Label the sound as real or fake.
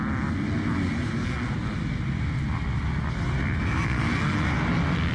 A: real